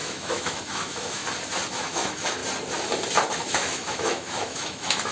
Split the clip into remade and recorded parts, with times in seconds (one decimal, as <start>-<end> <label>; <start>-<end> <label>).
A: 0.0-1.2 remade; 1.2-1.7 recorded; 1.7-2.4 remade; 2.4-3.3 recorded; 3.3-5.1 remade